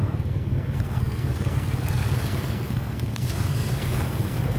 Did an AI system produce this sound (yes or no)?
yes